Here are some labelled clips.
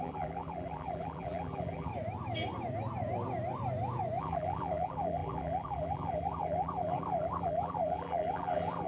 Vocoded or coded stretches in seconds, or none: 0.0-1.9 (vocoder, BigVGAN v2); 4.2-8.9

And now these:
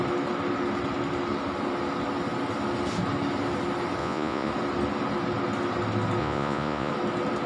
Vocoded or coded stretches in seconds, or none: 4.0-4.5 (vocoder, Vocos); 6.2-6.9

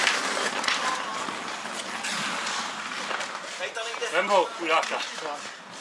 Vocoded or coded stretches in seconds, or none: none

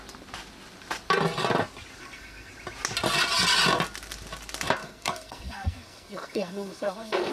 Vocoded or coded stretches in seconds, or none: 2.0-2.5 (codec, SNAC); 4.8-7.3

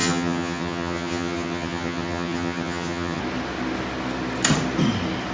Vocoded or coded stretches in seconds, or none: 0.0-3.2 (vocoder, HiFi-GAN)